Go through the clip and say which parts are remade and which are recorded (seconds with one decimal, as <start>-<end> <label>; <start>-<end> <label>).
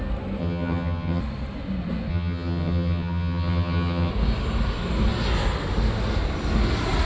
0.0-0.4 recorded; 0.4-1.2 remade; 1.2-2.1 recorded; 2.1-4.1 remade; 4.1-7.1 recorded